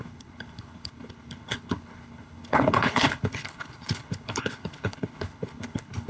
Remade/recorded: remade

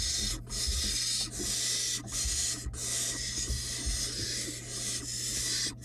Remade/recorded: recorded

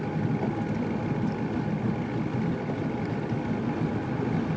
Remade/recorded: recorded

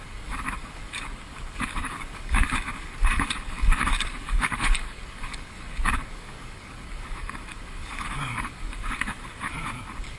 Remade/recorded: remade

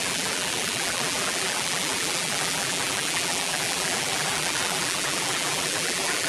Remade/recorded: remade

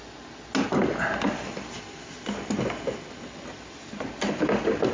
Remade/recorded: recorded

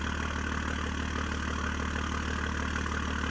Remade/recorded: recorded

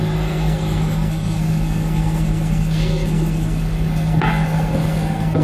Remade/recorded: remade